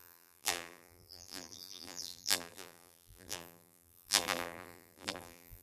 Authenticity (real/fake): fake